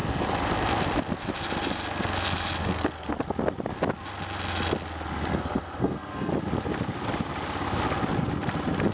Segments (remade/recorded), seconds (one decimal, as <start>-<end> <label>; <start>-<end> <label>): 0.0-2.6 recorded; 2.6-3.1 remade; 3.1-5.3 recorded; 5.3-6.3 remade; 6.3-8.9 recorded